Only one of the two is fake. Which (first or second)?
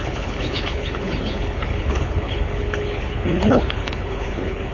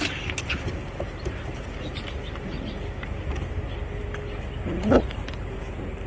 first